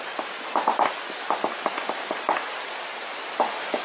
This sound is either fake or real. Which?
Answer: real